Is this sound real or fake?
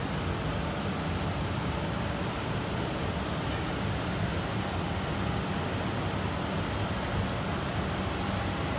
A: real